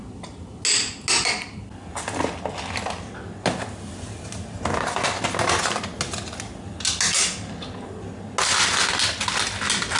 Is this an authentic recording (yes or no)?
yes